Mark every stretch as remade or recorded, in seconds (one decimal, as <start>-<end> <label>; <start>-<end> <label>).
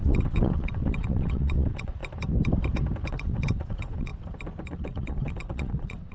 0.0-2.0 remade; 2.0-3.1 recorded; 3.1-4.1 remade; 4.1-4.7 recorded; 4.7-6.1 remade